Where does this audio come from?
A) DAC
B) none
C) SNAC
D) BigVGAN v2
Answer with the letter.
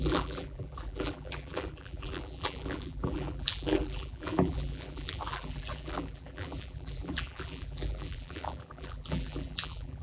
D